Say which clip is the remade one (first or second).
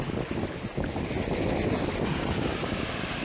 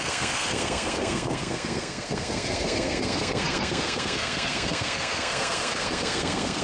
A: second